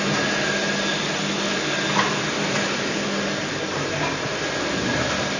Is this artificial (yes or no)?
no